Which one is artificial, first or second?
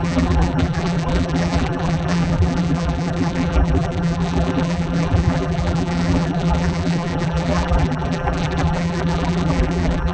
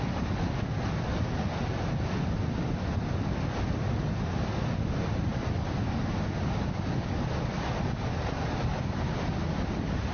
first